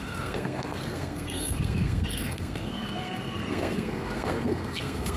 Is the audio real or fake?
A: fake